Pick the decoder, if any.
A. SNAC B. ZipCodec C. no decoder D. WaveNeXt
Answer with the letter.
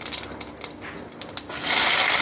C